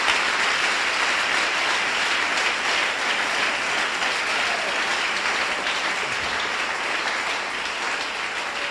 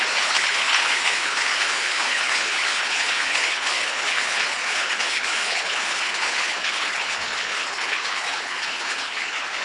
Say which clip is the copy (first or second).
second